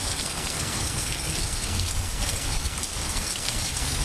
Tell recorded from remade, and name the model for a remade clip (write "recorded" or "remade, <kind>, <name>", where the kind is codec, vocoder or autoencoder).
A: remade, codec, SNAC